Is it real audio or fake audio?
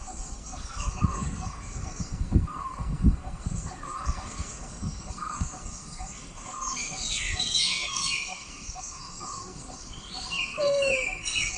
fake